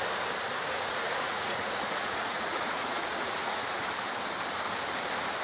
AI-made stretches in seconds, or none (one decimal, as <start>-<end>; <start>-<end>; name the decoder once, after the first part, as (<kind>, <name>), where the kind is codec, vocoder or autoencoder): 0.6-3.8 (vocoder, Vocos)